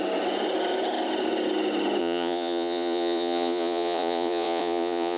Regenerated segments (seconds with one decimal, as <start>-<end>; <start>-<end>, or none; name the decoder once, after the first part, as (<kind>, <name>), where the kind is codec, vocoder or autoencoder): 2.0-5.2 (vocoder, Vocos)